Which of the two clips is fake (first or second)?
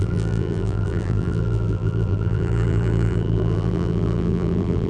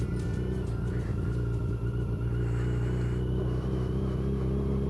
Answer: first